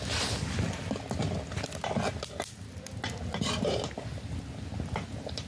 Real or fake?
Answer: real